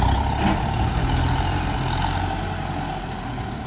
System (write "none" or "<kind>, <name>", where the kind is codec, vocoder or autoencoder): none